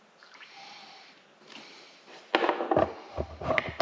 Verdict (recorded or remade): recorded